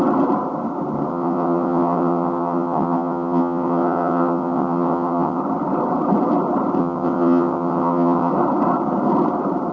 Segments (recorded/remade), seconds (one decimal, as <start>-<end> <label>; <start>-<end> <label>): 0.0-1.1 recorded; 1.1-5.4 remade; 5.4-6.8 recorded; 6.8-8.3 remade; 8.3-9.7 recorded